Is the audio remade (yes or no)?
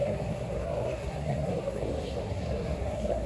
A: yes